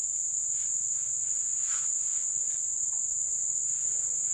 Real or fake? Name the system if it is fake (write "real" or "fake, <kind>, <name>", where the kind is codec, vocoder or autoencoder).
real